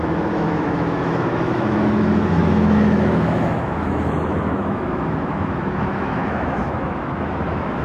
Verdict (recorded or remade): remade